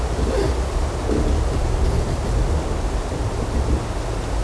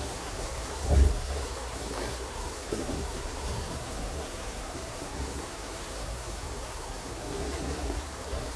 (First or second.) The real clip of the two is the first